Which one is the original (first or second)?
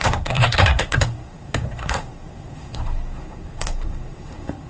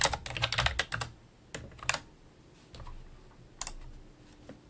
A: second